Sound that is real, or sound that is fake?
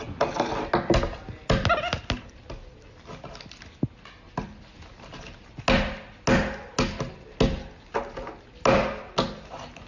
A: real